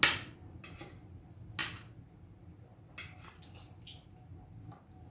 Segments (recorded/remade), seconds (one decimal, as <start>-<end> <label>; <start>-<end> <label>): 0.0-5.1 recorded